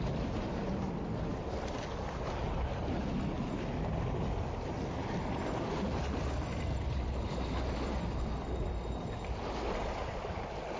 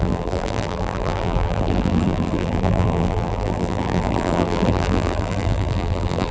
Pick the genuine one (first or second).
first